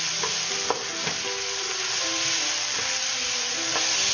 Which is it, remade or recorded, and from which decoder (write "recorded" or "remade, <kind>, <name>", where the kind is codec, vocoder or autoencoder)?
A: recorded